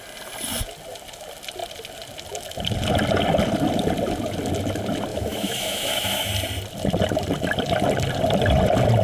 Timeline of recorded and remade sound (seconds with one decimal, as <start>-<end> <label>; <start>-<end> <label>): 0.0-5.1 recorded; 5.1-6.3 remade; 6.3-9.0 recorded